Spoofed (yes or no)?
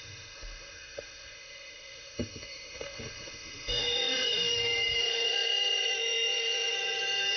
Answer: yes